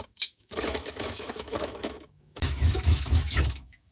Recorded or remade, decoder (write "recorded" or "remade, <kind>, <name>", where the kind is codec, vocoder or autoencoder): remade, autoencoder, DAC-VAE